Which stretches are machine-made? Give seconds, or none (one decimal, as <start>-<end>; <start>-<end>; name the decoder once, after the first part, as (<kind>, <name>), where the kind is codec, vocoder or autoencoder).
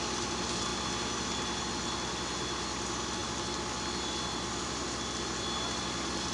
none